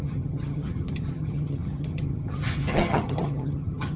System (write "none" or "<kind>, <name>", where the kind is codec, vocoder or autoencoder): vocoder, HiFi-GAN